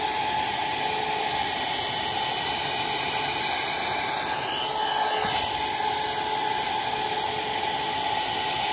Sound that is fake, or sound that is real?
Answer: real